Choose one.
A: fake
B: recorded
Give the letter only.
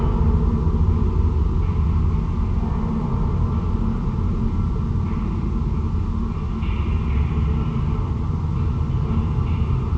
B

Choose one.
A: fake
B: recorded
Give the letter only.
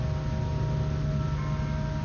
B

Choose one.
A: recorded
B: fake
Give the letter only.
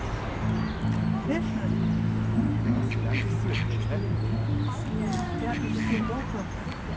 A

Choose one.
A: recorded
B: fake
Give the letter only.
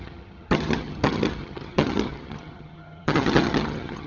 B